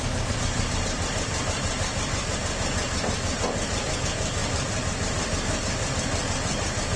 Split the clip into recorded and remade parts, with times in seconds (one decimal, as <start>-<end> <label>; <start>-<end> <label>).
0.0-7.0 remade